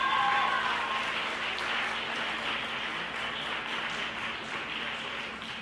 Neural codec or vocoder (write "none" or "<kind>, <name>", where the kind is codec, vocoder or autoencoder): none